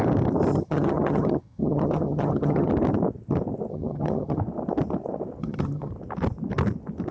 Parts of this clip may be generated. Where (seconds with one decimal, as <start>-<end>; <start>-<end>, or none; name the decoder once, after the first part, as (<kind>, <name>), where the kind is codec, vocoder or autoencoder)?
0.5-2.7 (vocoder, HiFi-GAN); 3.7-4.4; 5.4-5.9